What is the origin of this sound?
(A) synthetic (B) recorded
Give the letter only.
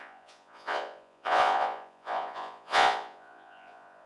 A